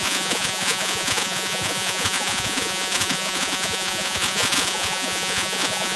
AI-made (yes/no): yes